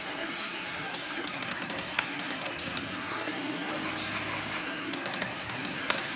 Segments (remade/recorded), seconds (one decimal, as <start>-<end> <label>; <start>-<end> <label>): 0.0-3.7 remade; 3.7-4.6 recorded; 4.6-6.2 remade